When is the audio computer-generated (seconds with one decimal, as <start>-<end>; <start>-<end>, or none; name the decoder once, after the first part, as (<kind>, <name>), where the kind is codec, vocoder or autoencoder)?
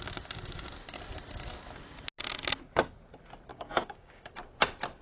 3.5-4.3 (codec, DAC)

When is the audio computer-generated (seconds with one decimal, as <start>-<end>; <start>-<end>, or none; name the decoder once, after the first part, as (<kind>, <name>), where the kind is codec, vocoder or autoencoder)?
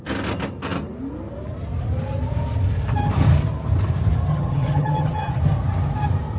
4.3-5.4 (vocoder, HiFi-GAN)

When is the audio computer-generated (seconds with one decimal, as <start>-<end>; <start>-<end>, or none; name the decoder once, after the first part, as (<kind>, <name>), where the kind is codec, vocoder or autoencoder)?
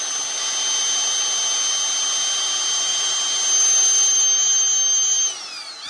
none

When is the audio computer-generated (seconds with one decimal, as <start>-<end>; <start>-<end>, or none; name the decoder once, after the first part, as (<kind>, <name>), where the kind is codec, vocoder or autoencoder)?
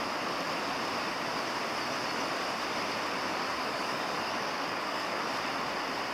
3.3-5.3 (codec, DAC)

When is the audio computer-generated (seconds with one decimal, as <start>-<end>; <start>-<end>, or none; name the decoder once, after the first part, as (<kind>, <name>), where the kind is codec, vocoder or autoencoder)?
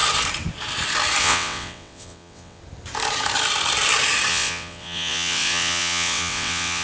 1.2-2.6 (vocoder, WaveNeXt); 4.3-6.8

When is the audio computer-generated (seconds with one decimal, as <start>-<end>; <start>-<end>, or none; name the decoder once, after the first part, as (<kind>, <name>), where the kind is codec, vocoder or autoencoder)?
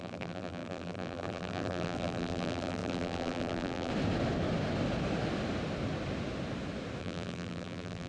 0.0-3.9 (vocoder, BigVGAN v2); 7.0-8.1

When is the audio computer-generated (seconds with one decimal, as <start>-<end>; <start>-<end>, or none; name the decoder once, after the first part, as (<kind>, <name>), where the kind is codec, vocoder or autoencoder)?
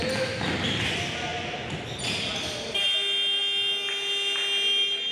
none